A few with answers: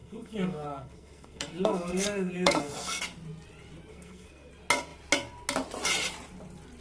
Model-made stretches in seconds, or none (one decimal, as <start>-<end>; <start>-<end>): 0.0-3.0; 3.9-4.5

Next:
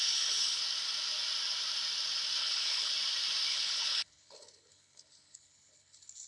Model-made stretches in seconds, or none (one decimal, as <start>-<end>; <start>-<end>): 0.0-0.6; 2.4-2.9; 3.5-6.3

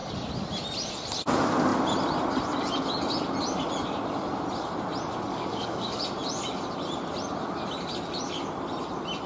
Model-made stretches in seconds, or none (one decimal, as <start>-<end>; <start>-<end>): 5.3-6.0